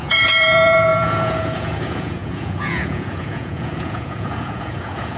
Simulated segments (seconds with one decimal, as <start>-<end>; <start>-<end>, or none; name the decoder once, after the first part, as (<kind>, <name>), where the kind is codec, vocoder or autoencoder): 0.0-5.2 (vocoder, Vocos)